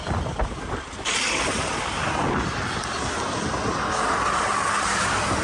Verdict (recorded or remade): recorded